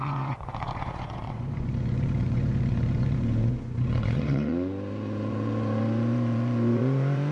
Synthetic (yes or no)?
yes